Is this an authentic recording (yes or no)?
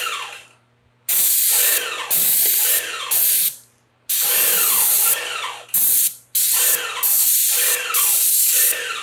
yes